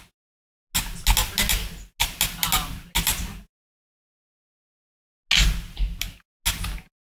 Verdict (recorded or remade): recorded